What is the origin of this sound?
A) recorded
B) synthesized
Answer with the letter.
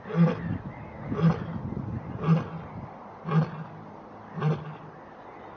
A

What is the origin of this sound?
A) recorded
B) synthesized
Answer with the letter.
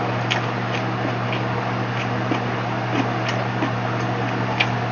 A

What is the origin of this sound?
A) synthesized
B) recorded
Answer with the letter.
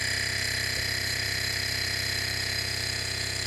A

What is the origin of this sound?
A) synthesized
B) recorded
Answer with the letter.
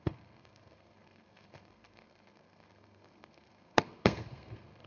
A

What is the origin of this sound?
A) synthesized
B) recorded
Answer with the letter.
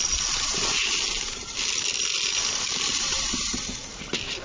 B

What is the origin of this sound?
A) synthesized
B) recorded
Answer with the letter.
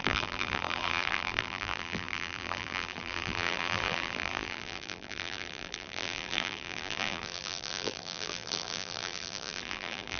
A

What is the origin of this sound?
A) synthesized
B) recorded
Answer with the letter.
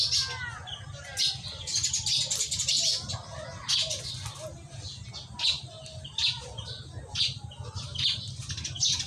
B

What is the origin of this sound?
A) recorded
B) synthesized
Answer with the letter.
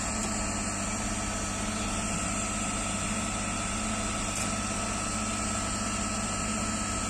A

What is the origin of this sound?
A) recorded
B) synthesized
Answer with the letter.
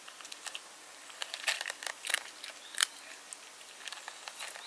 A